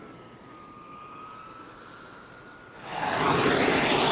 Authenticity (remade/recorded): recorded